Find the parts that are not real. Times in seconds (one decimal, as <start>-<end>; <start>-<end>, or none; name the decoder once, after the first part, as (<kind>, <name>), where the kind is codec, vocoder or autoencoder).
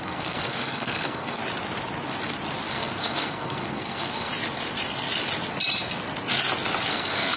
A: 0.0-1.4 (codec, SNAC); 2.7-4.3; 6.9-7.4